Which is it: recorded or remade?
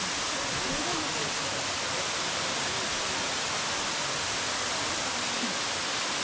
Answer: recorded